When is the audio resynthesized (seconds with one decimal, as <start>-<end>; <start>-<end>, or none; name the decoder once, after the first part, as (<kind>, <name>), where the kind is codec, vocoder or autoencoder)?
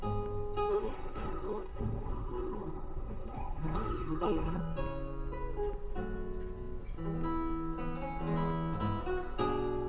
0.7-4.6 (codec, SNAC)